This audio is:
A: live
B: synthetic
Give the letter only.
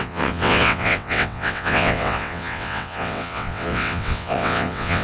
B